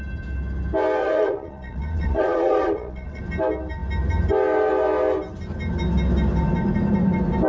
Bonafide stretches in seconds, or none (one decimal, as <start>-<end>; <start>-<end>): 0.0-1.0; 3.2-7.5